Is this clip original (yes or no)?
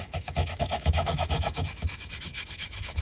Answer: no